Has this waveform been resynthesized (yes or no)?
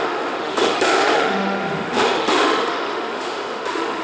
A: yes